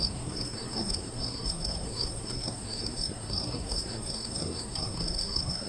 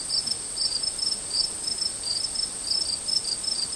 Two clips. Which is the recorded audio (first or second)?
second